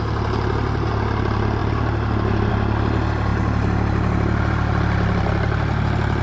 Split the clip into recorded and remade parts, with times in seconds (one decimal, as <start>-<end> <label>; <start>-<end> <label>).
0.0-6.2 recorded